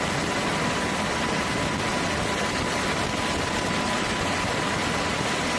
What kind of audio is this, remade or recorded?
recorded